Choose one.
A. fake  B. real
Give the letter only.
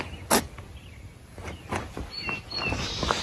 B